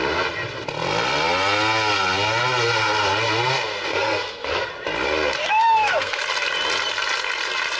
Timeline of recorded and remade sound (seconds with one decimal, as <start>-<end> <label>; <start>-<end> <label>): 0.0-3.9 recorded; 3.9-4.7 remade; 4.7-5.4 recorded; 5.4-6.2 remade; 6.2-7.8 recorded